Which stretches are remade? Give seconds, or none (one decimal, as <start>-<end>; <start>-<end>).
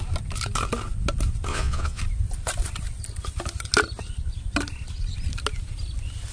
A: 1.5-2.0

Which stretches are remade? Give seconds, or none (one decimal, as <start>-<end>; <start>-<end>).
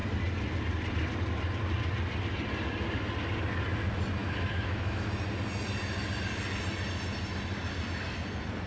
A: 4.2-5.1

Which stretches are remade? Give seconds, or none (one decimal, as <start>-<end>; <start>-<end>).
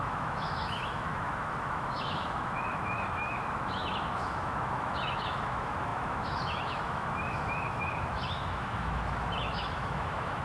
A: 0.0-10.4